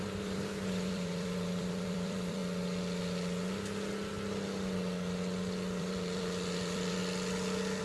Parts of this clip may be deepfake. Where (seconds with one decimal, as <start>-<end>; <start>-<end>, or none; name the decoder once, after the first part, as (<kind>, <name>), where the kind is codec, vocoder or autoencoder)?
0.0-2.4 (vocoder, BigVGAN v2); 5.8-7.0